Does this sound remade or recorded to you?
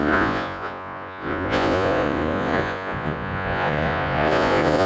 remade